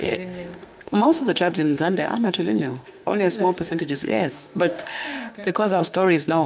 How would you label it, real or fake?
fake